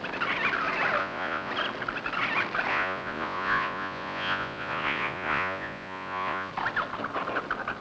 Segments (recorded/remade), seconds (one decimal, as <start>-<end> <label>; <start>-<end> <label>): 0.0-1.0 recorded; 1.0-1.5 remade; 1.5-2.7 recorded; 2.7-6.5 remade; 6.5-7.8 recorded